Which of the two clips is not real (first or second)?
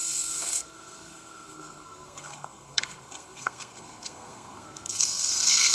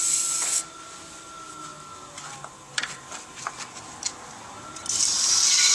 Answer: first